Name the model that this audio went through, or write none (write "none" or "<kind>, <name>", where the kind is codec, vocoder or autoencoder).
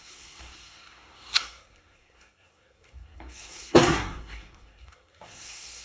codec, SNAC